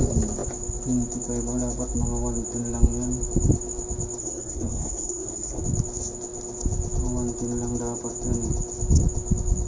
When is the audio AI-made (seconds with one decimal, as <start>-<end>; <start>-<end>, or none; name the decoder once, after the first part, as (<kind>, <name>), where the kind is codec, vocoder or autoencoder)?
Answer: 4.2-5.6 (codec, SNAC)